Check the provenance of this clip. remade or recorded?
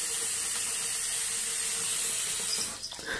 recorded